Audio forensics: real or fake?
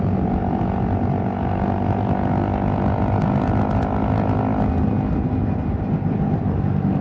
real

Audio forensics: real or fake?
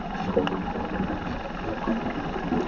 real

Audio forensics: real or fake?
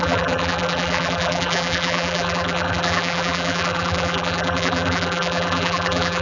fake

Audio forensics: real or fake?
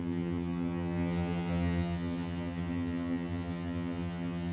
fake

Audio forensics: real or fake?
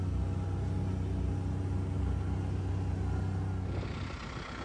real